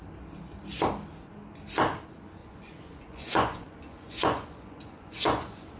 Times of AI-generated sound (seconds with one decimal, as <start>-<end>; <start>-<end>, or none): 2.4-5.8